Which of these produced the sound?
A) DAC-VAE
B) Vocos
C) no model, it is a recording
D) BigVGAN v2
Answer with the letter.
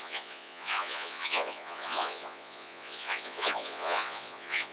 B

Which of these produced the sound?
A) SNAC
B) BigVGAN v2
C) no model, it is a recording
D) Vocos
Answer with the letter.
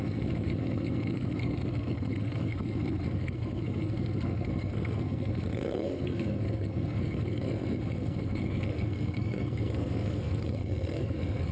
A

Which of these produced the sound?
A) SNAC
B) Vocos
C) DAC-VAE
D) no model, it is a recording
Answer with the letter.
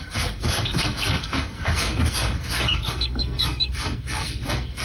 A